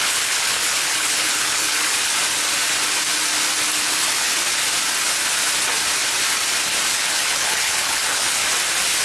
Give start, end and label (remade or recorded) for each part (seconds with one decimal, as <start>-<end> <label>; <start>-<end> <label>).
0.0-2.1 remade; 2.1-3.8 recorded; 3.8-4.4 remade; 4.4-6.9 recorded; 6.9-8.4 remade; 8.4-9.0 recorded